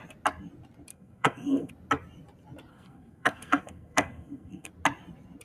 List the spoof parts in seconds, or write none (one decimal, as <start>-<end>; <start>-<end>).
0.9-1.7; 2.7-4.7